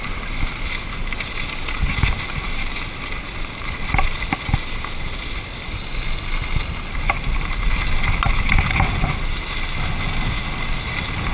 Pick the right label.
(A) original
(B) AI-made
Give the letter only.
A